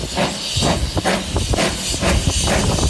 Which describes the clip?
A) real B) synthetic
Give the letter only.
A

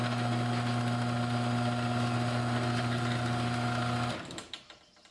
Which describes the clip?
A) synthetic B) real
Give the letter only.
B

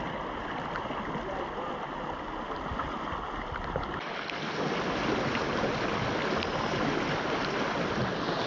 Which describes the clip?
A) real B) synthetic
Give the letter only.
A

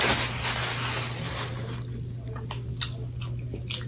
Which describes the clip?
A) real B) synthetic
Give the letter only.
A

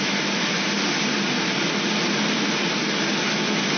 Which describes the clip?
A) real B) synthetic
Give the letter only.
A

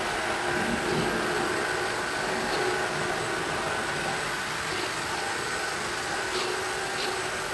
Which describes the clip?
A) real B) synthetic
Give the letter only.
A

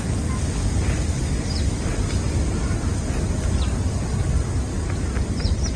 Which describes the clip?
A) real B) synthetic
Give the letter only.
A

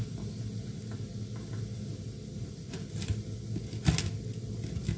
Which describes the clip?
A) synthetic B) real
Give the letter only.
B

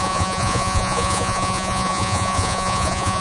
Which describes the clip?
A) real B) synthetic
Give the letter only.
B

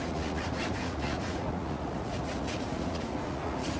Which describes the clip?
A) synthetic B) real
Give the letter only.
A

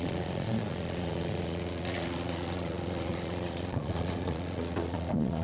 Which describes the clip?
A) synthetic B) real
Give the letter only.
A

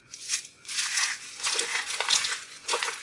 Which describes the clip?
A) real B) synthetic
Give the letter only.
B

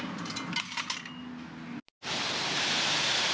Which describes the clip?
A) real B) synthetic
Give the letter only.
A